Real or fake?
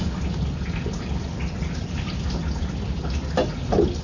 real